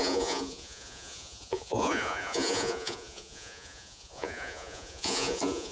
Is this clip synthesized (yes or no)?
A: yes